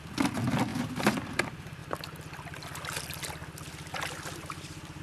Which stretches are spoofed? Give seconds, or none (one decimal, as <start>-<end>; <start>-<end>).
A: none